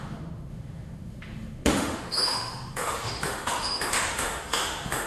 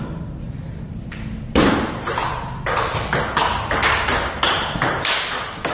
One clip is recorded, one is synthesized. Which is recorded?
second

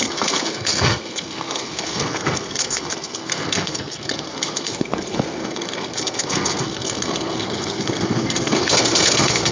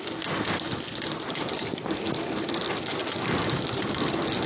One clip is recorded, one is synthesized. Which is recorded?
second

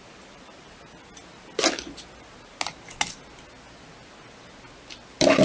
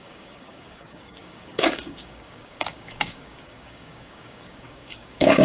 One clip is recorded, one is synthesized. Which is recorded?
first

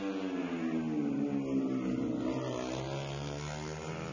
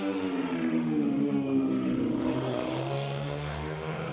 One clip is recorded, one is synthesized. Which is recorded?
first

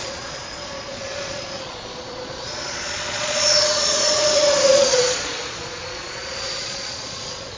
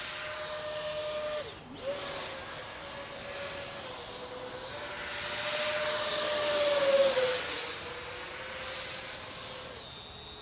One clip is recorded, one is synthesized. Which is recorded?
second